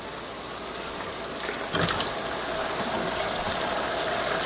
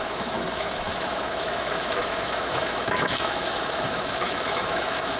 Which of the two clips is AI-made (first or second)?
second